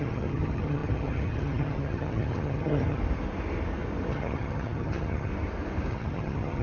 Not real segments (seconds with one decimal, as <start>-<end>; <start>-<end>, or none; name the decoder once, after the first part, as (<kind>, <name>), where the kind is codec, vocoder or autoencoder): 0.0-3.0 (vocoder, HiFi-GAN); 4.1-5.3; 5.9-6.6